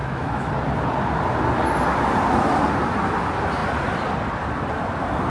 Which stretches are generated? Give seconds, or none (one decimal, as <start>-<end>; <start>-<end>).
0.0-0.5